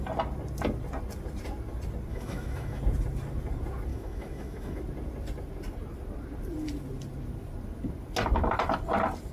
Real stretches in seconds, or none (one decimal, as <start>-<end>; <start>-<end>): 0.0-2.1; 2.8-3.9; 4.8-9.3